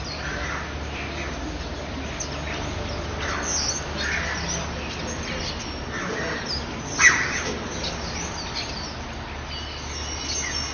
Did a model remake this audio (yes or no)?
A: no